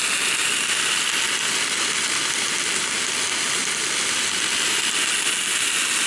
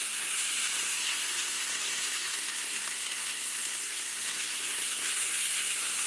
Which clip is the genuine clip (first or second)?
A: first